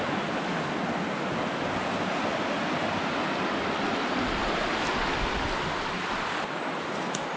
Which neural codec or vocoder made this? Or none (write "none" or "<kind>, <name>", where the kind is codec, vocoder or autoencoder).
none